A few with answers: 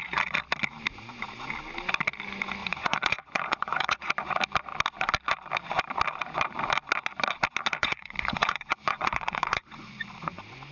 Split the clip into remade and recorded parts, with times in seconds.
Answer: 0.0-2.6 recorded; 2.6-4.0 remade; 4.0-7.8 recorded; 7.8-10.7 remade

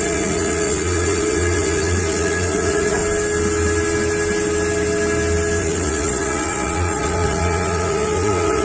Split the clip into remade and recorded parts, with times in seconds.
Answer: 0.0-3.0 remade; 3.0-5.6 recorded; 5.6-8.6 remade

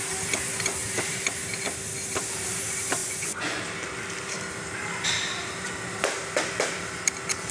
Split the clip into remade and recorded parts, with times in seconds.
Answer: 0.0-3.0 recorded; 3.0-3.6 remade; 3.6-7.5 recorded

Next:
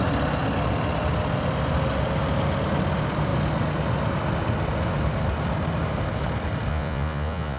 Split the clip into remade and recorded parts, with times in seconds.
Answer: 0.0-6.7 recorded; 6.7-7.6 remade

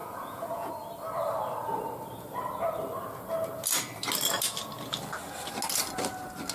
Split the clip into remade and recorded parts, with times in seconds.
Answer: 0.0-0.7 remade; 0.7-6.5 recorded